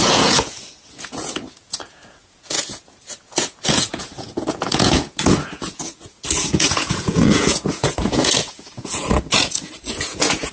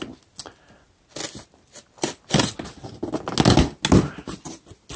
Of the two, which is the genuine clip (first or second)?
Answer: second